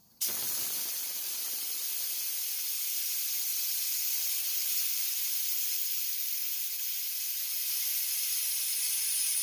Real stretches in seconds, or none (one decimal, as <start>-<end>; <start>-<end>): 0.6-9.4